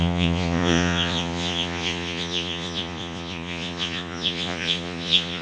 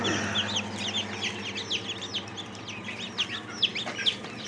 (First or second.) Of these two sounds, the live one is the second